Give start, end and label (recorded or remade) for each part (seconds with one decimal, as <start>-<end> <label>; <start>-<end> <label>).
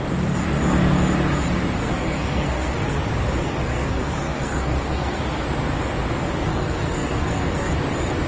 0.0-1.8 recorded; 1.8-3.0 remade; 3.0-3.4 recorded; 3.4-5.2 remade; 5.2-6.5 recorded; 6.5-7.7 remade; 7.7-8.3 recorded